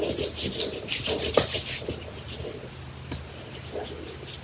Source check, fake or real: real